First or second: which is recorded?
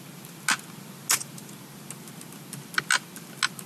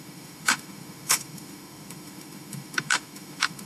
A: first